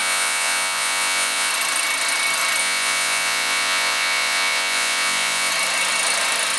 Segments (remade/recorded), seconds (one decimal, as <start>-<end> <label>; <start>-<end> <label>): 0.0-1.5 remade; 1.5-2.6 recorded; 2.6-5.5 remade; 5.5-6.6 recorded